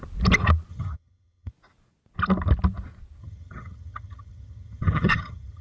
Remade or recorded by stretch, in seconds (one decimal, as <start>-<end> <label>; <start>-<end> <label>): 0.0-0.7 recorded; 0.7-1.5 remade; 1.5-3.2 recorded; 3.2-5.6 remade